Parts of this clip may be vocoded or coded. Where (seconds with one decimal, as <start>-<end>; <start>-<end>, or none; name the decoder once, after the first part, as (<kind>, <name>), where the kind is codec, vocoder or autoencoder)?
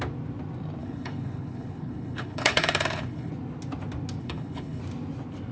0.8-3.3 (codec, HILCodec); 4.2-4.8